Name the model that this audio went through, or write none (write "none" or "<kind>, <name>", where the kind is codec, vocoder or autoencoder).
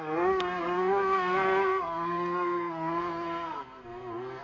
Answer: codec, SNAC